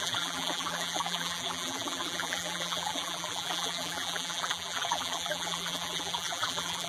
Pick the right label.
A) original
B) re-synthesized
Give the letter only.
B